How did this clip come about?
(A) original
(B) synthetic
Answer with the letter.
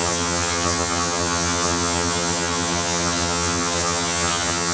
B